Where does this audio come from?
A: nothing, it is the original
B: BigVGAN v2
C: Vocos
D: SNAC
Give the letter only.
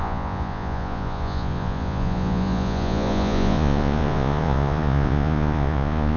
C